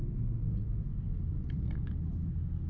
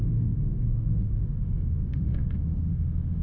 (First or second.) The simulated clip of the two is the second